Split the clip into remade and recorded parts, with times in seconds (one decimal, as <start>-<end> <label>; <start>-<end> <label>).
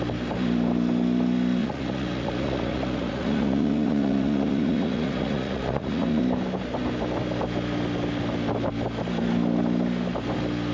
0.0-1.6 recorded; 1.6-6.2 remade; 6.2-10.7 recorded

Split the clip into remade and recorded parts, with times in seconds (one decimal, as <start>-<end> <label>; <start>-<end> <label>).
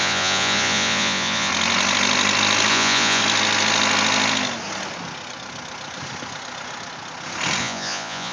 0.0-1.5 remade; 1.5-2.7 recorded; 2.7-3.2 remade; 3.2-7.6 recorded; 7.6-8.3 remade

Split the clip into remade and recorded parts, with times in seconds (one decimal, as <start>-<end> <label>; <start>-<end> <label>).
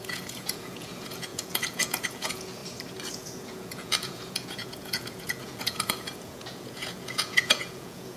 0.0-2.6 remade; 2.6-3.1 recorded; 3.1-8.2 remade